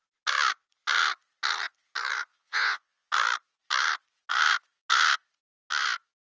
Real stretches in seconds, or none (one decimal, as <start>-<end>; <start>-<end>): 0.0-2.3; 3.1-6.4